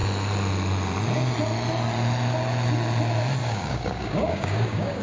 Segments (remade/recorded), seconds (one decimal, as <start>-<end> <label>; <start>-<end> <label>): 0.0-3.4 recorded; 3.4-5.0 remade